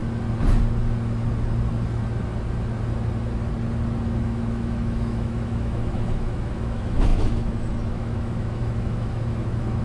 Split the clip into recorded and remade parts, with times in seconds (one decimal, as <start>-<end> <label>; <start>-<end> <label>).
0.0-4.2 recorded; 4.2-9.8 remade